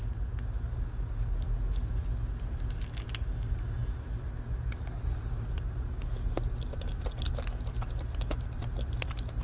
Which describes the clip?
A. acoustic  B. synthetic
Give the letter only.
A